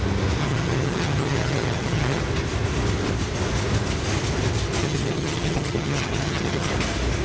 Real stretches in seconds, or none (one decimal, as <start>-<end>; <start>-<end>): 0.0-0.4; 2.2-4.8; 6.7-7.2